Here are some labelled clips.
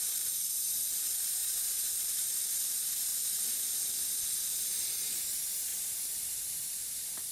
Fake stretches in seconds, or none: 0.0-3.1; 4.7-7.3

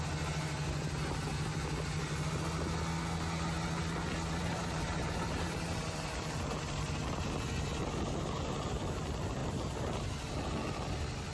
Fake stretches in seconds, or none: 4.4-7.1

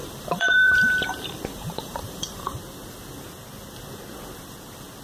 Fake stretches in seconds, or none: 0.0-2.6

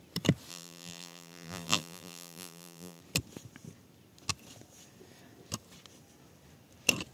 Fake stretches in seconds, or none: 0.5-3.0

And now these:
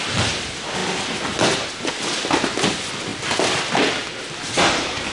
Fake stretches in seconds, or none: none

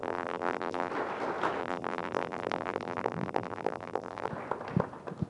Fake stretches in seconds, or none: 0.0-0.9; 1.6-4.3

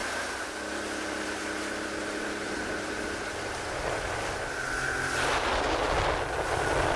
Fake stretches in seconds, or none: none